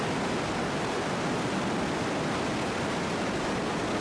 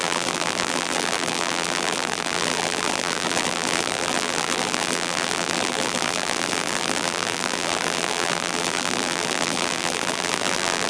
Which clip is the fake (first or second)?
second